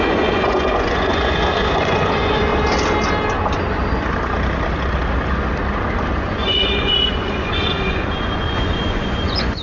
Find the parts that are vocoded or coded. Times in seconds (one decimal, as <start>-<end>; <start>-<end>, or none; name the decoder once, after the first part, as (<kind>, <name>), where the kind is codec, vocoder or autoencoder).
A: 0.0-2.5 (vocoder, Vocos); 6.2-9.6